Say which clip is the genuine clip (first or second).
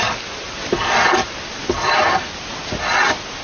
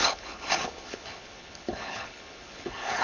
first